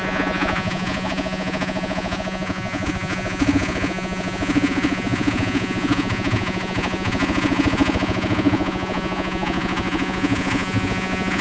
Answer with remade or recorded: remade